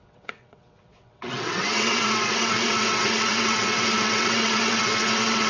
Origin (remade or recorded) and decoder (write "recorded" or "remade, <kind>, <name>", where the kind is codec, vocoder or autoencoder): remade, vocoder, WaveNeXt